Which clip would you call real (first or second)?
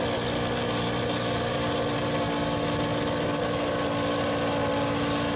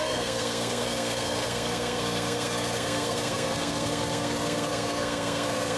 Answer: first